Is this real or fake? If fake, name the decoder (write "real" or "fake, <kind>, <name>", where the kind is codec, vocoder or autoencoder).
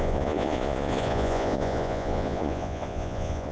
fake, vocoder, Vocos